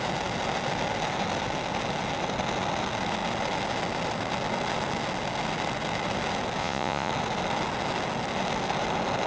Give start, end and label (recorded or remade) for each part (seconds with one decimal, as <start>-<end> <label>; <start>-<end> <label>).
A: 0.0-6.6 recorded; 6.6-7.1 remade; 7.1-9.3 recorded